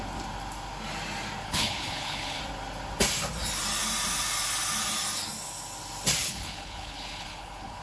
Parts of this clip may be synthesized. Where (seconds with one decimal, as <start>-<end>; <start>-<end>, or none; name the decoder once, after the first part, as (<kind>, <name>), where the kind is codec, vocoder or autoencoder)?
1.4-2.4 (codec, HILCodec); 6.2-7.8